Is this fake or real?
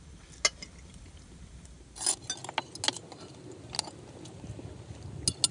real